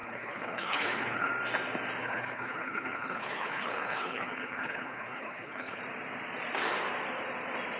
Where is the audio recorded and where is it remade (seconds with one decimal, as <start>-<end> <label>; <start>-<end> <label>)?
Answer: 0.0-1.3 remade; 1.3-2.0 recorded; 2.0-5.8 remade; 5.8-7.8 recorded